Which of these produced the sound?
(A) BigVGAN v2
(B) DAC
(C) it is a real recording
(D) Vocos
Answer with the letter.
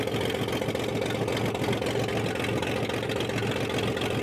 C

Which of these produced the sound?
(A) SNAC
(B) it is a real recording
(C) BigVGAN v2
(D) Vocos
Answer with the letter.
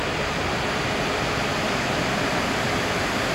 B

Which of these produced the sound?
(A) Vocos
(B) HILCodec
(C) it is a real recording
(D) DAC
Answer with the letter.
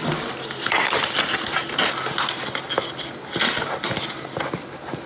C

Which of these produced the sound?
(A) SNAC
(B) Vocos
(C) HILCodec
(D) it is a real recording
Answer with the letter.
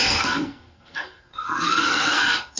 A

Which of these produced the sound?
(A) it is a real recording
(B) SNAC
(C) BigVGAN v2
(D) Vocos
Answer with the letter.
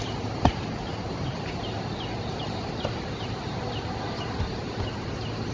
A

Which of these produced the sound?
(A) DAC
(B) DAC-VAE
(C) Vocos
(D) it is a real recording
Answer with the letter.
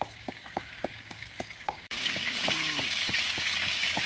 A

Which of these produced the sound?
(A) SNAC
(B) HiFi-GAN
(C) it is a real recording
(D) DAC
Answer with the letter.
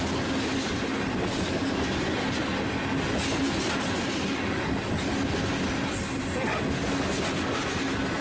C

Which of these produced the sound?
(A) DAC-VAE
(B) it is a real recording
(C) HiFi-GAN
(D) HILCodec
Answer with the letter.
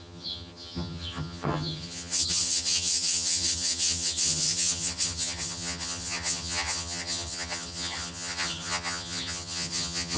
C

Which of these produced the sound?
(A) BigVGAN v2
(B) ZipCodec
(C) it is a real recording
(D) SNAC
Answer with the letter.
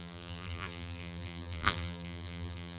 A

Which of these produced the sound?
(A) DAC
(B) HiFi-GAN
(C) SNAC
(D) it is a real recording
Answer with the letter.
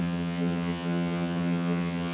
B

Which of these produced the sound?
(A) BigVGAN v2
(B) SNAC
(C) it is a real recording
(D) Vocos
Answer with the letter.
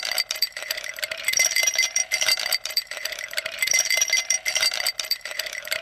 A